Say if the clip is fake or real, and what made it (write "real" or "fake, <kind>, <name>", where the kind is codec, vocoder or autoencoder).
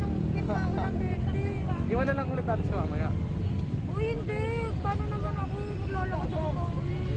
real